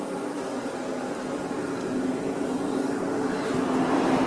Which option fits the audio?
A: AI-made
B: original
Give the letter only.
B